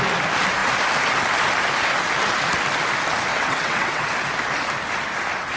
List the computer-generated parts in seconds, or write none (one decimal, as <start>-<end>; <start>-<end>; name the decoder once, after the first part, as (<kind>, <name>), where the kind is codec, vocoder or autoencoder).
3.3-4.1 (vocoder, WaveNeXt)